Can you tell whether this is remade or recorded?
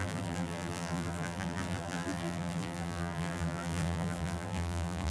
remade